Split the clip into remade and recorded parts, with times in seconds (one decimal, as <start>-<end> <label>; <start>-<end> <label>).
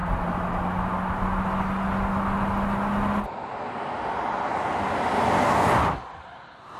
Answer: 0.0-6.8 recorded